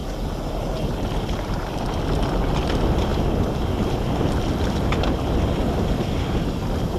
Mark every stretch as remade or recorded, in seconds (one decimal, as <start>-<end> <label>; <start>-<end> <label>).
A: 0.0-7.0 recorded